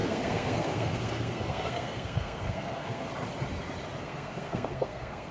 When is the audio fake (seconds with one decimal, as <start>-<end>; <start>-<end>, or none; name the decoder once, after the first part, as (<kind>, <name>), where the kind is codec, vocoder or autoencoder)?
0.0-3.1 (codec, SNAC); 4.0-5.3